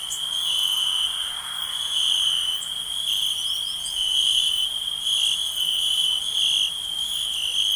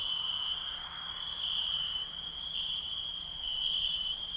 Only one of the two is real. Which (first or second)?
first